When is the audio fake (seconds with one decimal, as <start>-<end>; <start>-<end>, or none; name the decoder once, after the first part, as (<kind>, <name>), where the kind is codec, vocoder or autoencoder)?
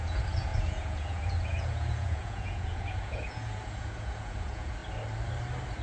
0.0-4.8 (vocoder, Vocos)